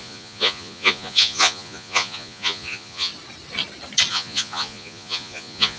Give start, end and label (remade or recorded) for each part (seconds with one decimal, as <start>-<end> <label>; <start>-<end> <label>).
0.0-3.1 remade; 3.1-4.1 recorded; 4.1-5.8 remade